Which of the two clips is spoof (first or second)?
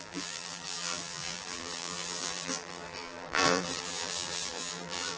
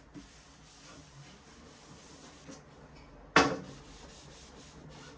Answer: first